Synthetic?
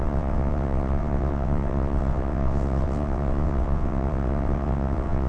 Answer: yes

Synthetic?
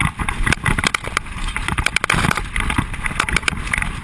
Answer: no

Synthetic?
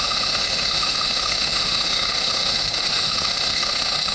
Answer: yes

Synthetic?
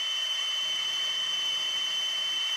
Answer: yes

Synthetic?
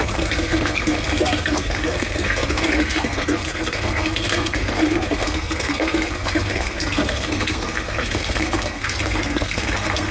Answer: yes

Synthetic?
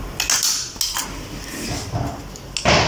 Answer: no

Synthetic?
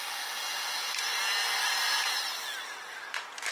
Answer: no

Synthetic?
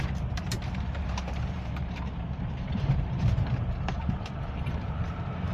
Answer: yes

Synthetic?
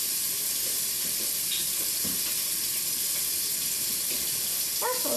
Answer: no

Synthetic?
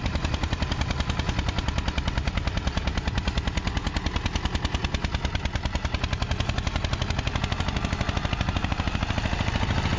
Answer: no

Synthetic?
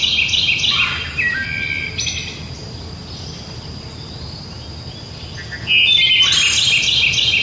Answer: no